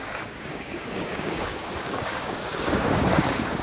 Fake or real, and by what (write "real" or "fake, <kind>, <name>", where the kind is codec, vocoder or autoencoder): fake, codec, DAC